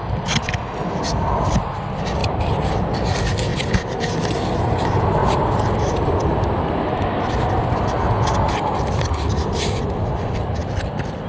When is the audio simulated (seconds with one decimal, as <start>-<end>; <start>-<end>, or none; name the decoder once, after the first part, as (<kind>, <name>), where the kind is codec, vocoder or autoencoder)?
2.2-2.7 (vocoder, BigVGAN v2); 3.5-4.1